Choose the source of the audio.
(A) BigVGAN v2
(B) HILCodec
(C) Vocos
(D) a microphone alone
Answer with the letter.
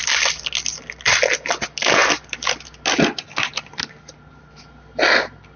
D